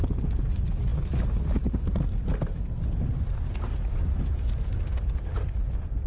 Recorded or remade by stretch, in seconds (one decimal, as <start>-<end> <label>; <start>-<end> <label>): 0.0-6.1 recorded